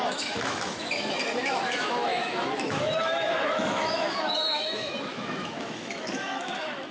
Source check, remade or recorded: remade